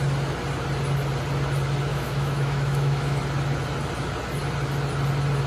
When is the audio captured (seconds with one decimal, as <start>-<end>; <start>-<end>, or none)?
0.0-1.9; 3.2-5.5